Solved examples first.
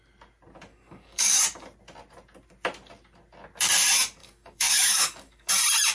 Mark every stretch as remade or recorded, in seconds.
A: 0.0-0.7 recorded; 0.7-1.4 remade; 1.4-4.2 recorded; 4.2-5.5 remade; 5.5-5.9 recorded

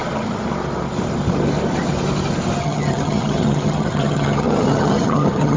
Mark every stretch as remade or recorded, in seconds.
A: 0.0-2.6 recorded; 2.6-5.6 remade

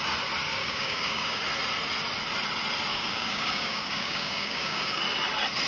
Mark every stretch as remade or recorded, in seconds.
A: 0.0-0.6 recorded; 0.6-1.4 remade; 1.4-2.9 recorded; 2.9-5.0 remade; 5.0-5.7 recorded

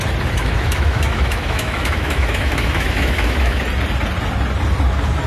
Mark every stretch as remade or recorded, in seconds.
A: 0.0-0.4 recorded; 0.4-3.6 remade; 3.6-5.3 recorded